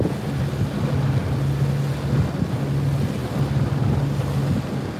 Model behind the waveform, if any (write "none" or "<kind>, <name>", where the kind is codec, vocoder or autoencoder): none